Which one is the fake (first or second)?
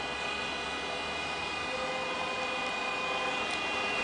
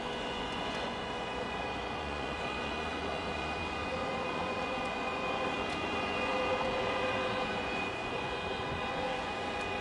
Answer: second